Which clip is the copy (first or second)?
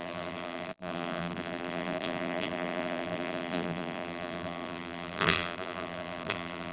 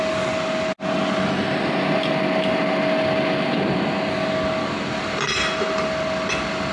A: first